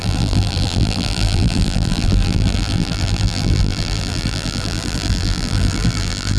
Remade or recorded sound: remade